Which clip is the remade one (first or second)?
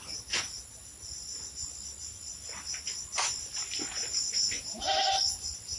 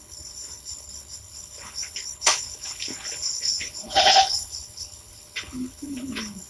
second